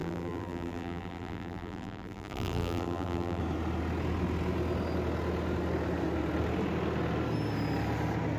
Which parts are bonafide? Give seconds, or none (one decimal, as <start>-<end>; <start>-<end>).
3.4-8.4